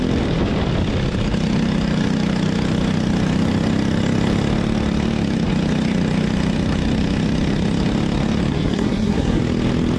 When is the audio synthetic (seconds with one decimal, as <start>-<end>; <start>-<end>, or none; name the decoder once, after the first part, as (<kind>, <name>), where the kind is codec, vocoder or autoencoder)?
8.5-9.4 (codec, SNAC)